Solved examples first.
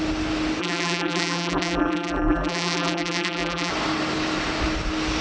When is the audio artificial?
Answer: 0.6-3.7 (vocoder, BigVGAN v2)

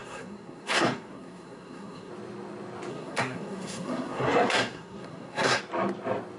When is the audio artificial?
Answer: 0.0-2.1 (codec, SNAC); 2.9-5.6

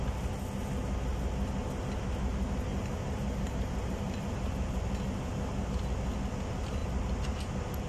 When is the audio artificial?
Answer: 2.7-5.0 (vocoder, BigVGAN v2); 6.8-7.4

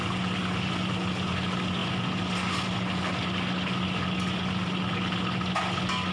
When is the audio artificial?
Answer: none

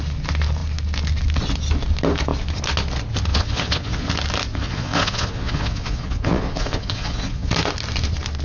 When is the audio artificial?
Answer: 3.3-4.1 (vocoder, Vocos); 4.5-7.5

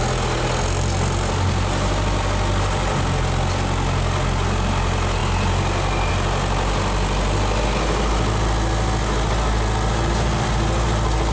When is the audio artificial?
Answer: none